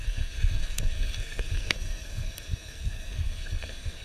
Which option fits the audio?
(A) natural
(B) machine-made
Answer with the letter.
B